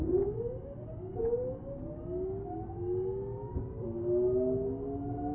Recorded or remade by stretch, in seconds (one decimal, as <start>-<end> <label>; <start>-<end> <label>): 0.0-5.3 recorded